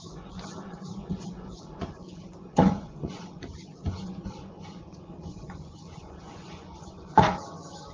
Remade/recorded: remade